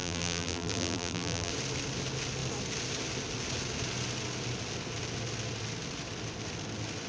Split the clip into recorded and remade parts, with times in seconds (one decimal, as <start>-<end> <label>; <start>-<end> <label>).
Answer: 0.0-1.5 remade; 1.5-7.1 recorded